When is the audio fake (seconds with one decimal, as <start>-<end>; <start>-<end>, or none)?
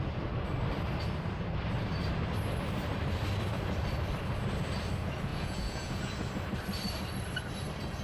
5.3-6.0